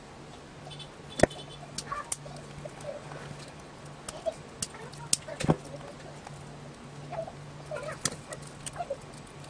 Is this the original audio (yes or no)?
yes